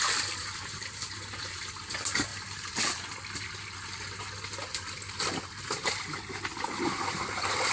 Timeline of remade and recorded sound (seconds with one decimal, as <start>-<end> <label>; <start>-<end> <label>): 0.0-0.4 recorded; 0.4-1.6 remade; 1.6-7.7 recorded